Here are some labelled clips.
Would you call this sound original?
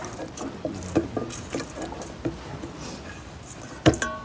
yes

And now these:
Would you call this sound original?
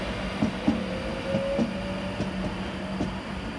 yes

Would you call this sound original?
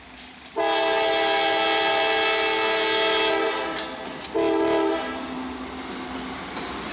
yes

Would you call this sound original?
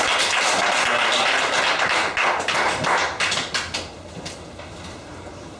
yes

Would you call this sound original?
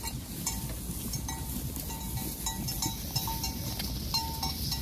yes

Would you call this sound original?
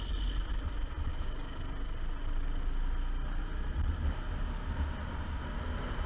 yes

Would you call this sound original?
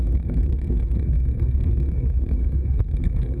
no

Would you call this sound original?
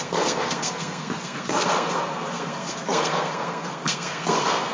no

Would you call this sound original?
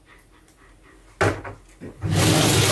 yes